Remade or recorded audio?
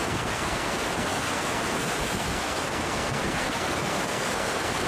remade